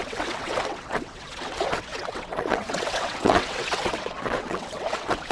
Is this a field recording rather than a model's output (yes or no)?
no